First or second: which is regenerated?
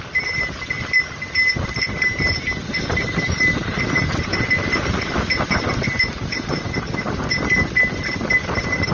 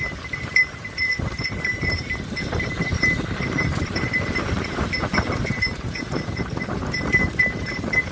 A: second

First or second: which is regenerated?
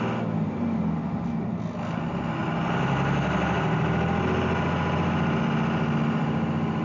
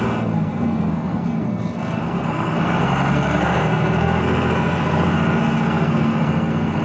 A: second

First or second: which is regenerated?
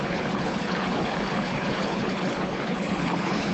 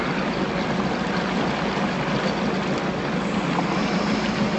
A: first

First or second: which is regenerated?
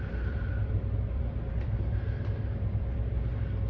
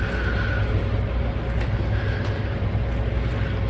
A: first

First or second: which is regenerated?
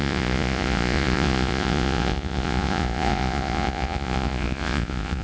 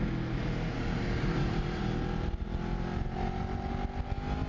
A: first